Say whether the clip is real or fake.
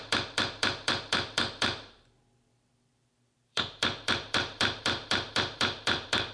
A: fake